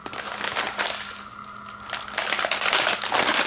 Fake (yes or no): no